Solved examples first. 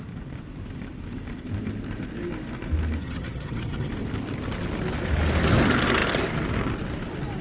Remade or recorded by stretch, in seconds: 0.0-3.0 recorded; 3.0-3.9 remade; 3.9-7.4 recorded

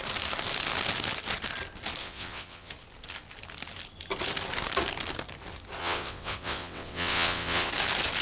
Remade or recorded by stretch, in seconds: 0.0-2.0 recorded; 2.0-2.7 remade; 2.7-5.8 recorded; 5.8-7.7 remade; 7.7-8.2 recorded

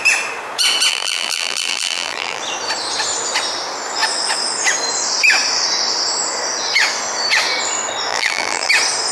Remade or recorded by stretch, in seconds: 0.0-0.9 recorded; 0.9-2.4 remade; 2.4-8.1 recorded; 8.1-8.7 remade; 8.7-9.1 recorded

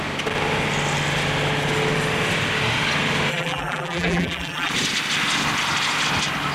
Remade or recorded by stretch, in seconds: 0.0-3.3 recorded; 3.3-4.7 remade; 4.7-6.5 recorded

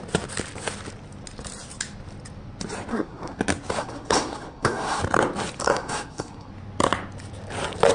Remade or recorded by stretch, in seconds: 0.0-2.9 recorded; 2.9-3.4 remade; 3.4-3.8 recorded; 3.8-5.0 remade; 5.0-5.6 recorded; 5.6-6.5 remade; 6.5-7.9 recorded

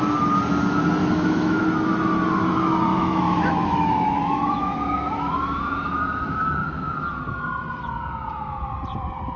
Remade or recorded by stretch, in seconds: 0.0-1.0 recorded; 1.0-1.6 remade; 1.6-2.9 recorded; 2.9-7.2 remade; 7.2-9.4 recorded

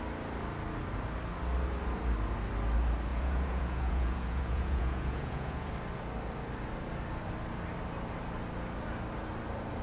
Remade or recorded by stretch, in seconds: 0.0-3.1 recorded; 3.1-5.7 remade; 5.7-9.8 recorded

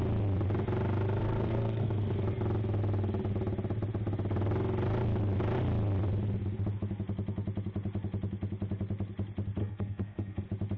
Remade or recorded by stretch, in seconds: 0.0-1.2 recorded; 1.2-1.9 remade; 1.9-9.6 recorded; 9.6-10.4 remade; 10.4-10.8 recorded